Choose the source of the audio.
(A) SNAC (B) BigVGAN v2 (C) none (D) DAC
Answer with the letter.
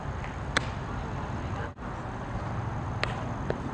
C